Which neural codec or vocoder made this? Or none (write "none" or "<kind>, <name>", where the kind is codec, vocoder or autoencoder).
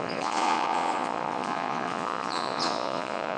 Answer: vocoder, Vocos